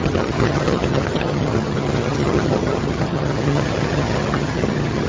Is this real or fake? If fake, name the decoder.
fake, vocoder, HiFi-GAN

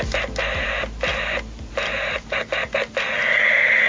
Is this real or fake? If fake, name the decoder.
real